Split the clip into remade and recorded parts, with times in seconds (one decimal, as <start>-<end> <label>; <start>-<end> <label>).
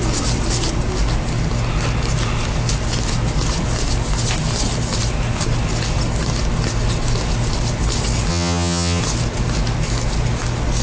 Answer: 0.0-8.3 recorded; 8.3-9.0 remade; 9.0-10.8 recorded